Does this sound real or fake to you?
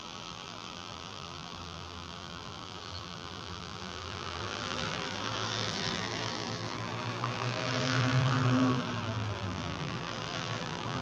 fake